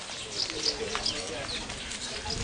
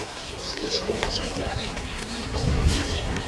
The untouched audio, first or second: first